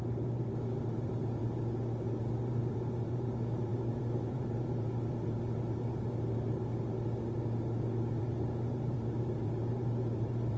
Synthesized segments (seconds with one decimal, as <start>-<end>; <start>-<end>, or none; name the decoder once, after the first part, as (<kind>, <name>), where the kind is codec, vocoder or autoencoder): 0.0-6.7 (vocoder, BigVGAN v2); 8.2-10.6